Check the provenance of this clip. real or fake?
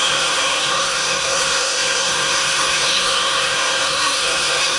fake